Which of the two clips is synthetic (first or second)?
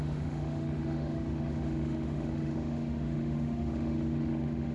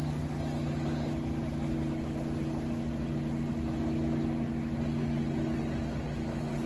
first